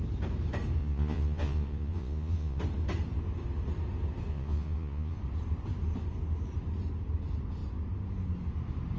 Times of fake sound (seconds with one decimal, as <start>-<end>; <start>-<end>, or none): 0.8-2.6; 4.3-5.2